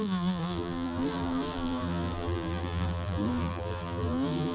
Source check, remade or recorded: remade